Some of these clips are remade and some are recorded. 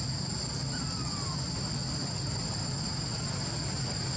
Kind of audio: recorded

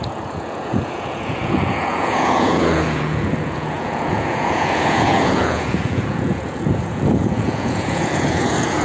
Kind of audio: remade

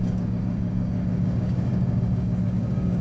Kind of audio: remade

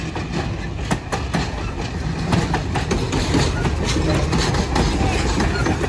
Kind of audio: recorded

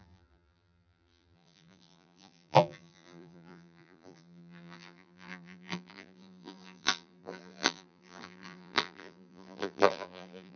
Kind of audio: remade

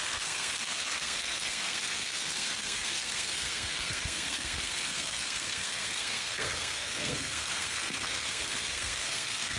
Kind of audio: remade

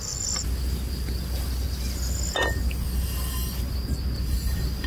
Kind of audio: recorded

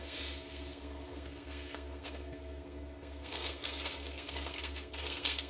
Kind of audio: remade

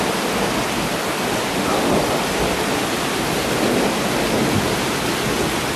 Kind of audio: recorded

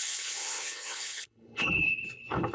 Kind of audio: remade